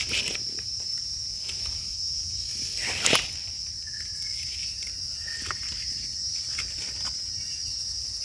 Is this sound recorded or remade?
recorded